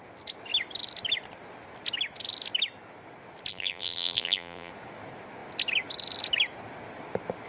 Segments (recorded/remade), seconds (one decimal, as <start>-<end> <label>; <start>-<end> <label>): 0.0-3.5 recorded; 3.5-4.7 remade; 4.7-7.5 recorded